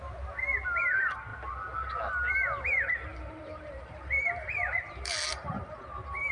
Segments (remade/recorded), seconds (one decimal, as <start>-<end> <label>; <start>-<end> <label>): 0.0-3.1 recorded; 3.1-5.8 remade; 5.8-6.3 recorded